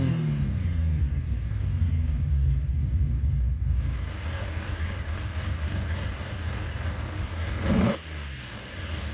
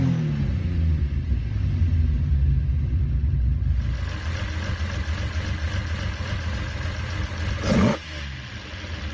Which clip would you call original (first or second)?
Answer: second